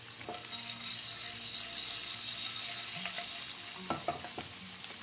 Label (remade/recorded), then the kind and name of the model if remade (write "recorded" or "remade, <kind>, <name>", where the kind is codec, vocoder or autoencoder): recorded